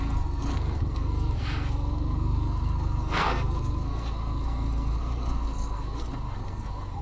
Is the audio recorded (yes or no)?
no